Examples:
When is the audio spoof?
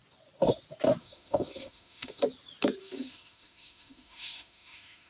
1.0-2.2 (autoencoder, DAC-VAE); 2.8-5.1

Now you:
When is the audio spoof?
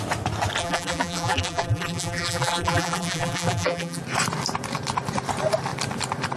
0.6-4.0 (vocoder, BigVGAN v2)